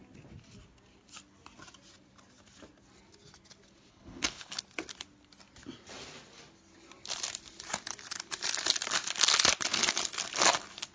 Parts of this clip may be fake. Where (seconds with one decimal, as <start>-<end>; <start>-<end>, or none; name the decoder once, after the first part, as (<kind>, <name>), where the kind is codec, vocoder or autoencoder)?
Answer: 3.9-4.6 (codec, HILCodec)